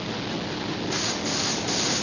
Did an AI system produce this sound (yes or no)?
no